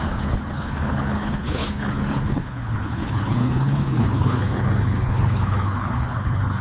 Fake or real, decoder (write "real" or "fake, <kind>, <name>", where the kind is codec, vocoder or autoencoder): fake, codec, HILCodec